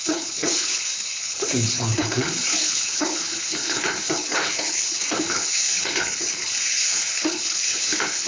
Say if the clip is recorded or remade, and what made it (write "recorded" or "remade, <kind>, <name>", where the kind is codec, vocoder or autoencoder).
remade, codec, HILCodec